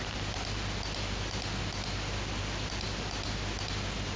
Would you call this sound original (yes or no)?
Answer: yes